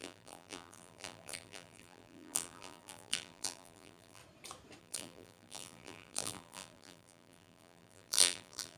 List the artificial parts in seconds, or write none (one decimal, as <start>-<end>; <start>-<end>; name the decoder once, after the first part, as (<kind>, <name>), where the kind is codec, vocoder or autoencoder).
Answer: 0.0-4.2 (vocoder, BigVGAN v2); 4.8-8.8